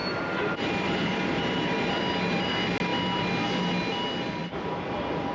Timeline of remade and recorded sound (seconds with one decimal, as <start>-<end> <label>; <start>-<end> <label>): 0.0-2.5 remade; 2.5-4.4 recorded; 4.4-5.3 remade